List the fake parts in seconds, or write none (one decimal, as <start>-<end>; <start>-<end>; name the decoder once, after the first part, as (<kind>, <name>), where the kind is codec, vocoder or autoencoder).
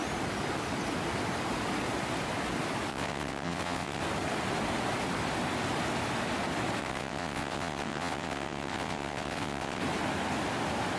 2.9-4.0 (vocoder, WaveNeXt); 6.8-9.8